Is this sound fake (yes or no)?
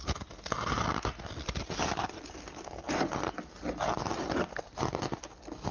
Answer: no